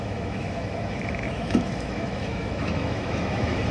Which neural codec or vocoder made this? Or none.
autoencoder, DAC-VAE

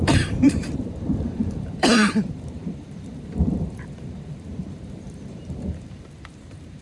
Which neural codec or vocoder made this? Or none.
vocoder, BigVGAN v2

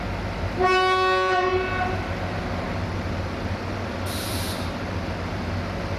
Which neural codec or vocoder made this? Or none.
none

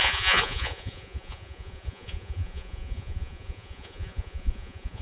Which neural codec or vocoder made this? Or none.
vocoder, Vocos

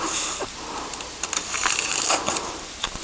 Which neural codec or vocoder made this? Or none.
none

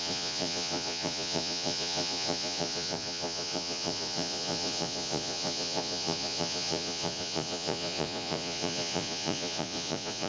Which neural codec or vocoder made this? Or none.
vocoder, Vocos